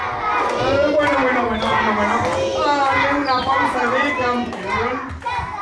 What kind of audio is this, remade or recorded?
recorded